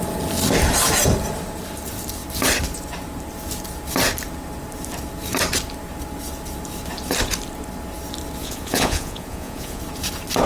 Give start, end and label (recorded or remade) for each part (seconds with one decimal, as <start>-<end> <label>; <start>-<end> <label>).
0.0-8.4 recorded; 8.4-9.8 remade; 9.8-10.5 recorded

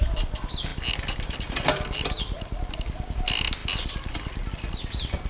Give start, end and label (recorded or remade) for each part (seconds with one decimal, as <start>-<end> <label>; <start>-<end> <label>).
0.0-3.6 recorded; 3.6-4.5 remade; 4.5-5.3 recorded